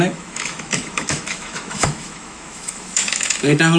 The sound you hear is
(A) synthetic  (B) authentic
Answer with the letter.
A